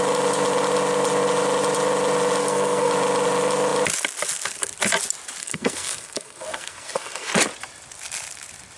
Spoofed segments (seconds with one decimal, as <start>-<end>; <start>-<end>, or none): 2.4-2.9; 5.4-7.3